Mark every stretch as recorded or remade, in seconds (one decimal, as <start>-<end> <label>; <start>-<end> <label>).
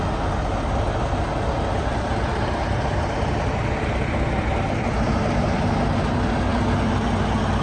0.0-2.3 recorded; 2.3-3.6 remade; 3.6-7.6 recorded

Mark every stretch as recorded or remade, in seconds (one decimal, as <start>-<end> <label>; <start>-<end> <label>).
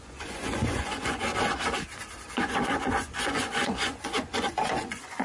0.0-1.3 remade; 1.3-2.3 recorded; 2.3-5.2 remade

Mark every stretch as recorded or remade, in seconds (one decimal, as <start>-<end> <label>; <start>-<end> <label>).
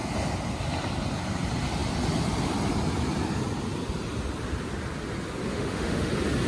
0.0-5.5 recorded; 5.5-6.1 remade; 6.1-6.5 recorded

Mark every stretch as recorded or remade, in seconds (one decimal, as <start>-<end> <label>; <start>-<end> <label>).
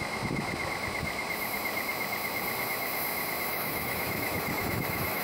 0.0-3.5 recorded; 3.5-5.2 remade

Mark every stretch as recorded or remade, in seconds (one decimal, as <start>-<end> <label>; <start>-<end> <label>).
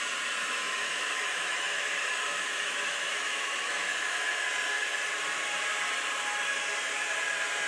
0.0-0.4 recorded; 0.4-4.2 remade; 4.2-7.7 recorded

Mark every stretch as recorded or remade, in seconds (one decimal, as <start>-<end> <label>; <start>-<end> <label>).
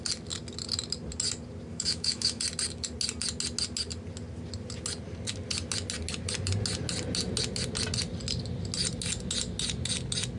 0.0-1.7 recorded; 1.7-2.4 remade; 2.4-10.4 recorded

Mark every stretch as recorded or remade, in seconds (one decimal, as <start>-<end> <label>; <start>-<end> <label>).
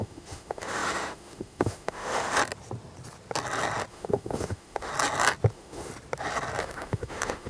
0.0-2.4 remade; 2.4-3.9 recorded; 3.9-4.9 remade; 4.9-5.5 recorded; 5.5-5.9 remade; 5.9-6.6 recorded; 6.6-7.5 remade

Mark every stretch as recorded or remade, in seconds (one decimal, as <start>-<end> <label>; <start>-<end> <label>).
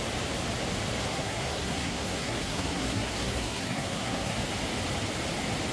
0.0-1.0 recorded; 1.0-4.4 remade; 4.4-5.7 recorded